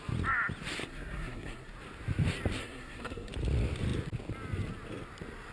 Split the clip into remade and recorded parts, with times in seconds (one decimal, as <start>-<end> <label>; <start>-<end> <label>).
0.0-0.8 recorded; 0.8-1.7 remade; 1.7-2.6 recorded; 2.6-3.3 remade; 3.3-5.5 recorded